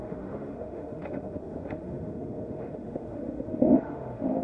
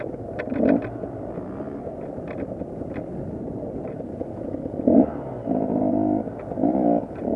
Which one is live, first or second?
second